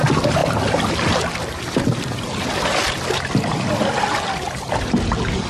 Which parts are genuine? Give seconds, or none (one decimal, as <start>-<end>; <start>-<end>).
0.0-5.5

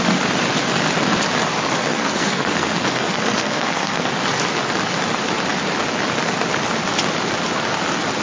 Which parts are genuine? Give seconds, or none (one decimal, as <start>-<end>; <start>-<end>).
0.0-1.8; 4.1-8.2

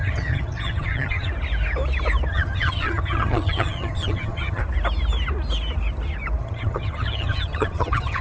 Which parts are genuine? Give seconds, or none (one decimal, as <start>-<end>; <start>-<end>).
1.3-2.3; 4.6-6.4